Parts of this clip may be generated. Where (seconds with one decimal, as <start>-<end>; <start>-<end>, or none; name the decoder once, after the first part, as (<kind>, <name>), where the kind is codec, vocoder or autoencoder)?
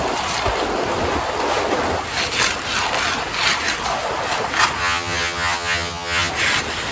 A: 4.8-6.3 (vocoder, HiFi-GAN)